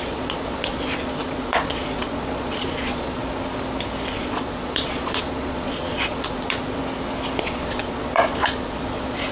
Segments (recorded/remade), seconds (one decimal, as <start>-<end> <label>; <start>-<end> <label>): 0.0-3.2 remade; 3.2-4.1 recorded; 4.1-6.8 remade; 6.8-7.4 recorded; 7.4-9.3 remade